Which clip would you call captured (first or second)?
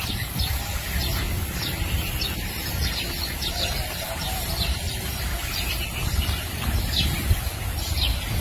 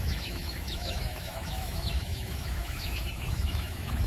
first